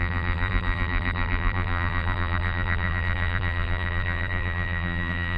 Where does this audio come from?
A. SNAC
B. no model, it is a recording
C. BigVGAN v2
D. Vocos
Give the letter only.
C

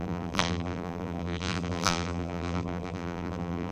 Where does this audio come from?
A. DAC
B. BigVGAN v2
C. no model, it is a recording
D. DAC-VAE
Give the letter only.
B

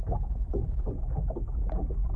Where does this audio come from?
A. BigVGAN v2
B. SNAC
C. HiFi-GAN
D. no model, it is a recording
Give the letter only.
D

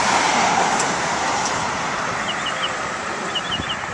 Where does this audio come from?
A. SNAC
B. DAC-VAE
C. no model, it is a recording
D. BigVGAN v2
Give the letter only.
D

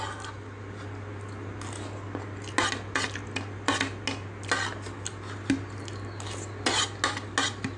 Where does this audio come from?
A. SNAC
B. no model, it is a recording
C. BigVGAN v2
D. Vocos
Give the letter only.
B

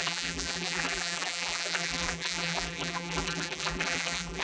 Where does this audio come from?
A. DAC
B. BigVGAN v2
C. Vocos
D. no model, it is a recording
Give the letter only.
B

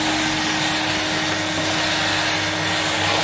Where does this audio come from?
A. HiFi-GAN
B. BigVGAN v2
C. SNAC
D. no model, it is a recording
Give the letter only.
D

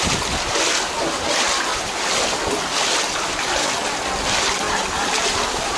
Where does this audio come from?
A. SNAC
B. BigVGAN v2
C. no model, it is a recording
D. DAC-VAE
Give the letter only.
C